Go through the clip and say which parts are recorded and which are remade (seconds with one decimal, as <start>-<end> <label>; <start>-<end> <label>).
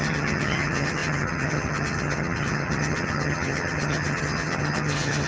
0.0-5.3 remade